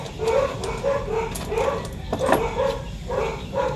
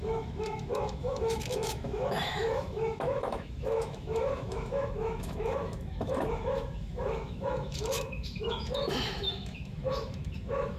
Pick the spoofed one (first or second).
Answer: second